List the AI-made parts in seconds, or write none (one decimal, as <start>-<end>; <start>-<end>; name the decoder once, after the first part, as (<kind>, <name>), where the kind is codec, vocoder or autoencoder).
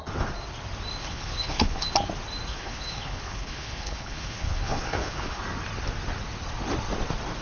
1.0-1.9 (codec, HILCodec); 2.5-5.4